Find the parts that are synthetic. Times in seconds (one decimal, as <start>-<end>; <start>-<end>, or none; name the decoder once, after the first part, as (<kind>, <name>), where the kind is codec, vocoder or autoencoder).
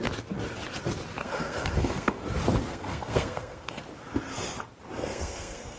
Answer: 1.2-2.2 (codec, SNAC); 2.7-3.8; 5.0-5.8